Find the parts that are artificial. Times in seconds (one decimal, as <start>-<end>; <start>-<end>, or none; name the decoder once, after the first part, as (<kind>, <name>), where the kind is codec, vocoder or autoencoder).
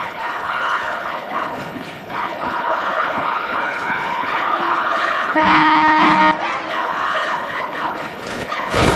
0.0-6.2 (codec, HILCodec); 6.7-9.0